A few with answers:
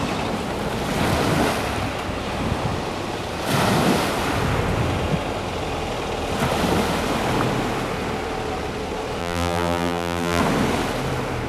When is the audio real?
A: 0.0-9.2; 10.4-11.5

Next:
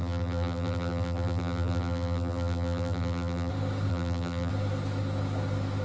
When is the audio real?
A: 3.5-3.9; 4.5-5.8

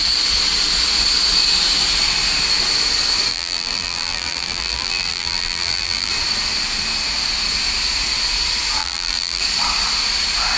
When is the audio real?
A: 0.0-3.3; 6.1-8.8; 9.4-10.6

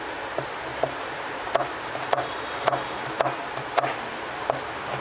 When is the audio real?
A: 0.0-0.7; 3.2-5.0

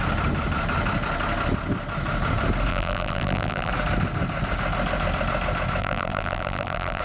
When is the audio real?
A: 0.0-2.7; 3.7-5.8

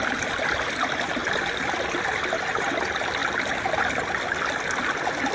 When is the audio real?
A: 0.0-1.2; 2.5-5.3

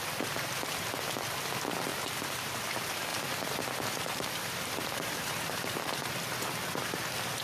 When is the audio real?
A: 0.0-1.9; 2.6-3.1; 6.4-7.4